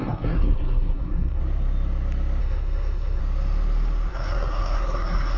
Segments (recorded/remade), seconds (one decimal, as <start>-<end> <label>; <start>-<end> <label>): 0.0-1.4 remade; 1.4-2.4 recorded; 2.4-3.2 remade; 3.2-4.1 recorded; 4.1-5.4 remade